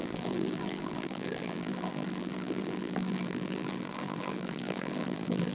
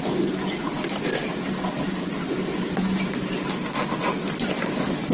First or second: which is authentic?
second